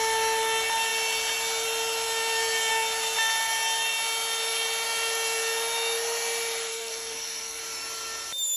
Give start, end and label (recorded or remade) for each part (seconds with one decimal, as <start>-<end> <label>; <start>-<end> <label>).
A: 0.0-6.7 recorded; 6.7-7.6 remade; 7.6-8.6 recorded